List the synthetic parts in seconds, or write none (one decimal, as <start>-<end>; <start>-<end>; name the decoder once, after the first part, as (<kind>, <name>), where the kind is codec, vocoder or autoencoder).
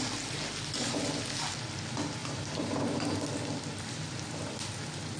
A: 2.2-3.2 (vocoder, BigVGAN v2)